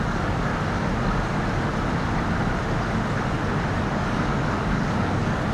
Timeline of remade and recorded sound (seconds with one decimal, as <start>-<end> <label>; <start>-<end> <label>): 0.0-0.5 remade; 0.5-3.8 recorded; 3.8-5.5 remade